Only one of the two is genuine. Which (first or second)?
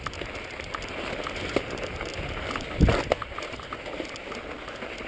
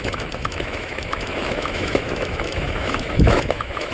first